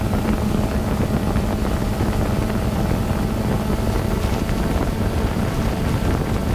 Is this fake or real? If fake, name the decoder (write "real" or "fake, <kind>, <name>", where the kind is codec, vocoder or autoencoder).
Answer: real